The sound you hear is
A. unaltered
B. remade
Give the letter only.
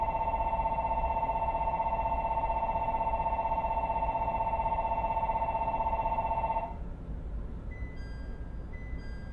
A